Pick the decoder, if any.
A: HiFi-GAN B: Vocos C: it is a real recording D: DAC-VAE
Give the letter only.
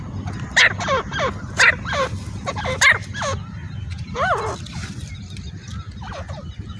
C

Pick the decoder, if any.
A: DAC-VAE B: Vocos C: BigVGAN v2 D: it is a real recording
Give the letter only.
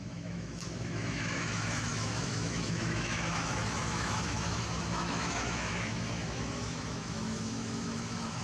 A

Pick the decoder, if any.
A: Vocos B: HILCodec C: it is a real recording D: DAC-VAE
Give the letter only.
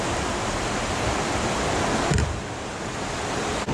C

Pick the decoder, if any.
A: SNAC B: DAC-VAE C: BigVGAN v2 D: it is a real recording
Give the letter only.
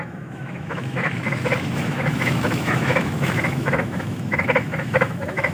B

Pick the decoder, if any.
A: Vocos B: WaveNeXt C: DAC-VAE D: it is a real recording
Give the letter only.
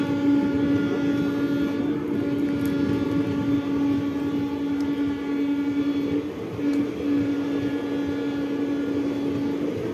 D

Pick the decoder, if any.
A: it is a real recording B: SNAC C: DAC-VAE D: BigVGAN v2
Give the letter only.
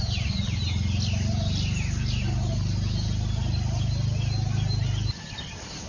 A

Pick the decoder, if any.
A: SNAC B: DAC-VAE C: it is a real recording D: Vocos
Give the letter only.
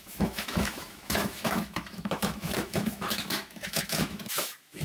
B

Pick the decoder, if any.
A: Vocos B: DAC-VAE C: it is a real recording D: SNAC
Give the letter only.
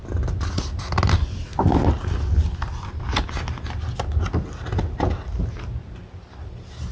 C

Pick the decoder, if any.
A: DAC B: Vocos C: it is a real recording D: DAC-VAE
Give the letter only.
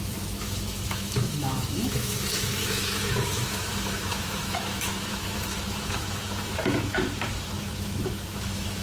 D